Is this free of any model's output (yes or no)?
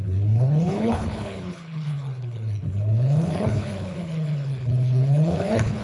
no